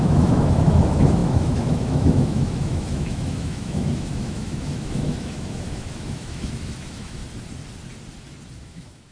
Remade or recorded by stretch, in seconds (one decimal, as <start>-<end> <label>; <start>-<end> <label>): 0.0-7.2 remade; 7.2-8.6 recorded; 8.6-9.1 remade